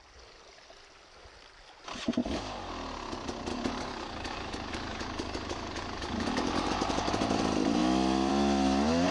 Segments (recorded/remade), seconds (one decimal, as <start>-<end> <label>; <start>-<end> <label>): 0.0-2.2 recorded; 2.2-2.7 remade; 2.7-3.5 recorded; 3.5-7.1 remade; 7.1-9.1 recorded